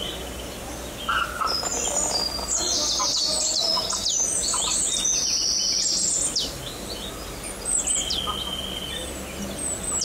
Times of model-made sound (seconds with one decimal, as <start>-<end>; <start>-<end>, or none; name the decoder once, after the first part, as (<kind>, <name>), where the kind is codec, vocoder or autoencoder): none